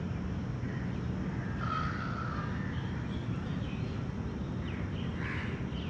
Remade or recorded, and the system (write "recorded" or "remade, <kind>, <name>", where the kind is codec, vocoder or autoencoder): recorded